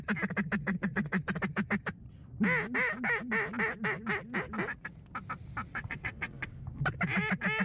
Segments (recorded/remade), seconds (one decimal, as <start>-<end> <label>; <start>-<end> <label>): 0.0-0.6 recorded; 0.6-1.2 remade; 1.2-5.7 recorded; 5.7-6.5 remade; 6.5-7.6 recorded